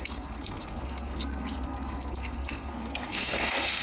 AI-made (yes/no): yes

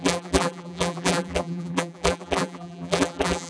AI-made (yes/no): yes